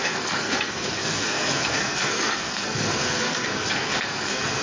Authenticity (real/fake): fake